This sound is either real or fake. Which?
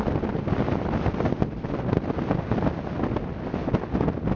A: real